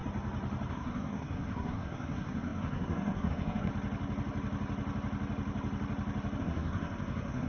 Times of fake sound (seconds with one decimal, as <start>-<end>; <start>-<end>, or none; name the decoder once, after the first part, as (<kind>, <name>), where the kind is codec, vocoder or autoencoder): 0.7-3.7 (codec, SNAC); 6.4-7.5